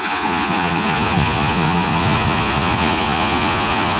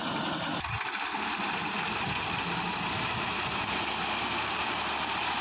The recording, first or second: second